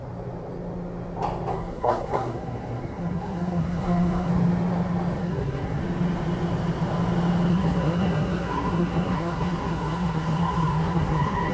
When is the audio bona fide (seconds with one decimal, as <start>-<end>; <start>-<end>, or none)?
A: 0.0-1.5; 4.3-5.2; 5.8-7.5